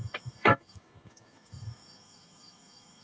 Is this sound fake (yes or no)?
yes